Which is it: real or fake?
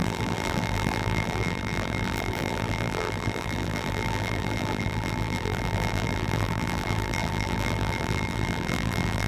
fake